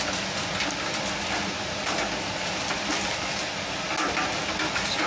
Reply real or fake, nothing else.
real